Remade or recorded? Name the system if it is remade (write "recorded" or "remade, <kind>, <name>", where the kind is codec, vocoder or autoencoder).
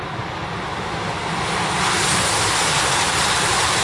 recorded